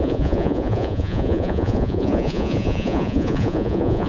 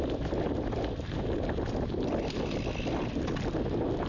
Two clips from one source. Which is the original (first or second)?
second